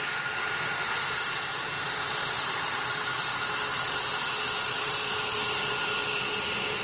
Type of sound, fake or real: real